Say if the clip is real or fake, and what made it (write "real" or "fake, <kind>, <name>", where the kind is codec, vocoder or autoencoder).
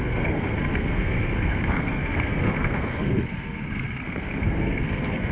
fake, codec, SNAC